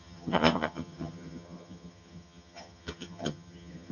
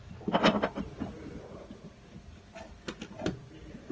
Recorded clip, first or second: second